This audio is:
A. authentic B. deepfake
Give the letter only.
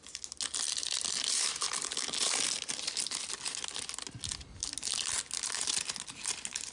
A